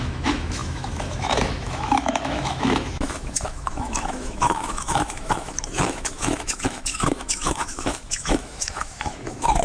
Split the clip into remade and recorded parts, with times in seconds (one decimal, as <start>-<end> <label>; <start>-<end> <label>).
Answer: 0.0-9.6 remade